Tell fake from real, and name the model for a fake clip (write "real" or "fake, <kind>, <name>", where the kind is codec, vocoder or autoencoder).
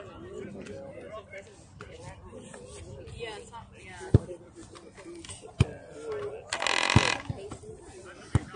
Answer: real